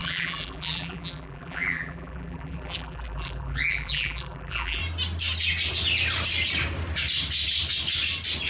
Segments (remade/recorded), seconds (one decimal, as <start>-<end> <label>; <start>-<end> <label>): 0.0-4.8 remade; 4.8-8.5 recorded